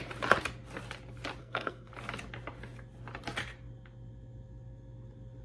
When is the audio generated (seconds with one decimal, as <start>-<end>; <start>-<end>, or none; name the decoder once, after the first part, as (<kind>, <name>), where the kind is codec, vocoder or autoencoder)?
1.4-1.9 (codec, SNAC)